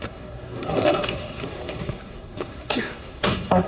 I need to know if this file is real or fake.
fake